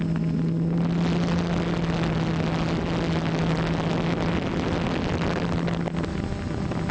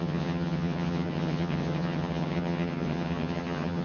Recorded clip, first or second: first